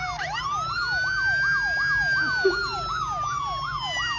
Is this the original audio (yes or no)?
yes